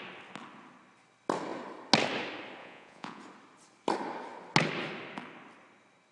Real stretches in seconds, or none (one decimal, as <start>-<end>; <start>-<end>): 0.0-2.6; 3.2-6.1